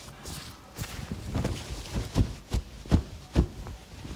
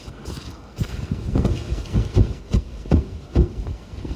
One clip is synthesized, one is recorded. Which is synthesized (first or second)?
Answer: second